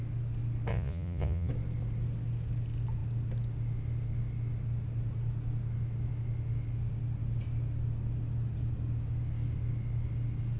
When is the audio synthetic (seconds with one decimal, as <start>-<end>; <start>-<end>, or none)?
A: 0.7-1.5